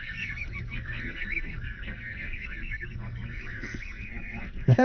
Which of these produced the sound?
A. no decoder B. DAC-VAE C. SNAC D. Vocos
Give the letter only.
C